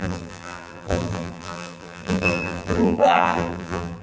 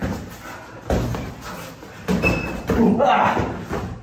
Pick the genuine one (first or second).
second